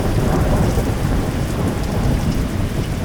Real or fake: fake